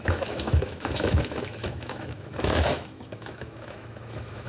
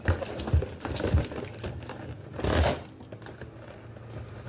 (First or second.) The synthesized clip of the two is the first